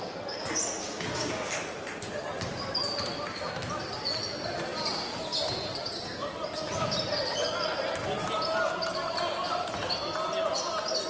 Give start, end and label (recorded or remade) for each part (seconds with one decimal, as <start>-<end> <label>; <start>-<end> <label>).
0.0-0.8 recorded; 0.8-1.5 remade; 1.5-11.1 recorded